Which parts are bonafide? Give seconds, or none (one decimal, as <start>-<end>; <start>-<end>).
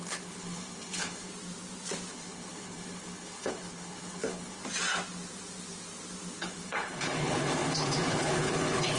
1.3-2.1; 4.6-6.4